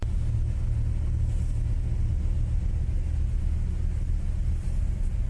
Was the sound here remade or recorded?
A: recorded